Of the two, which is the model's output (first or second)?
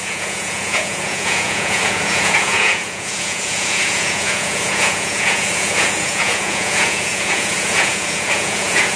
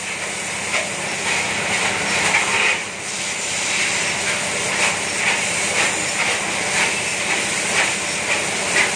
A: first